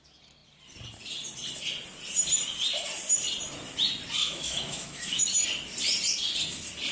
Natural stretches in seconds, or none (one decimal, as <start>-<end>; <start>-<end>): 0.0-4.2; 5.2-6.9